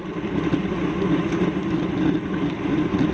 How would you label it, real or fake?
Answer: real